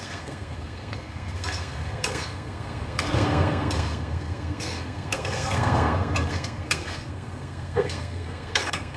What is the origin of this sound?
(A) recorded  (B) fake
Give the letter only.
B